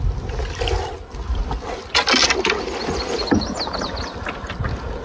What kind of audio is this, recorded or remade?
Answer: recorded